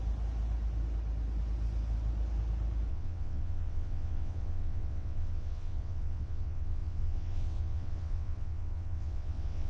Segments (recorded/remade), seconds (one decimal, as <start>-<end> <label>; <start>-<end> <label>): 0.0-2.9 recorded; 2.9-9.7 remade